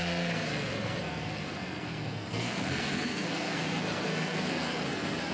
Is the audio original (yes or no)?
no